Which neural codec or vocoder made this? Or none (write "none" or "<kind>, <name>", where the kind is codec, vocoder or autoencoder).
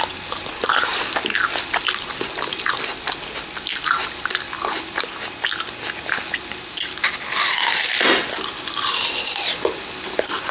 none